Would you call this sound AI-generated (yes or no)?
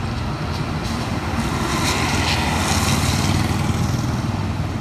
no